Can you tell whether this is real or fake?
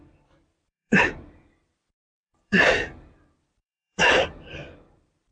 fake